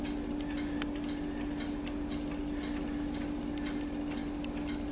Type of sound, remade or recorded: recorded